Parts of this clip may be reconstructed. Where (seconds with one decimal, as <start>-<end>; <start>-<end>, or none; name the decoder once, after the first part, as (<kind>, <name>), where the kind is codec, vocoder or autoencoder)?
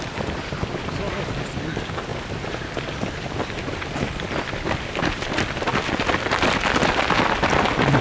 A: none